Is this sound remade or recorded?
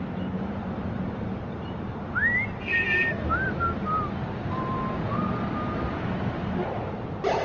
recorded